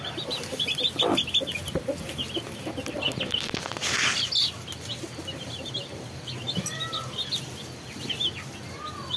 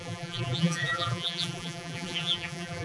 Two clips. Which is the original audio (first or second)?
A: first